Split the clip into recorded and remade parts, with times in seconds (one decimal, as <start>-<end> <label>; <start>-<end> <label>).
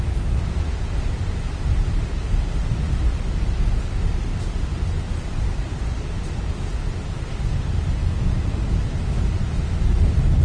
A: 0.0-8.0 recorded; 8.0-8.8 remade; 8.8-10.4 recorded